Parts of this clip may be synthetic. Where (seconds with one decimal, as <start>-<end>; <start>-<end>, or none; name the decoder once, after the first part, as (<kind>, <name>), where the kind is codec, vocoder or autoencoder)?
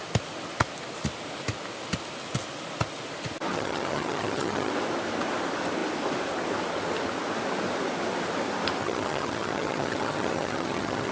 3.5-4.7 (vocoder, HiFi-GAN); 8.8-11.1